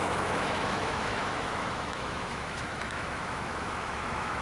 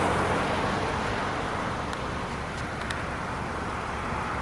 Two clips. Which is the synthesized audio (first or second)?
first